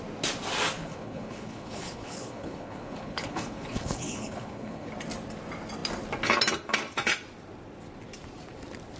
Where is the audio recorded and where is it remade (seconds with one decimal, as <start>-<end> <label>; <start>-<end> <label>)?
0.0-0.8 recorded; 0.8-4.9 remade; 4.9-9.0 recorded